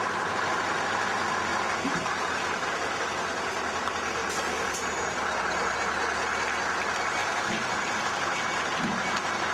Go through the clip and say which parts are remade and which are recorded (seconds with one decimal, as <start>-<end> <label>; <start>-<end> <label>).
0.0-1.5 recorded; 1.5-3.1 remade; 3.1-4.2 recorded; 4.2-5.4 remade; 5.4-7.2 recorded; 7.2-8.0 remade; 8.0-9.5 recorded